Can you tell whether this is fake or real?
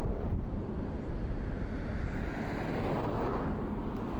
real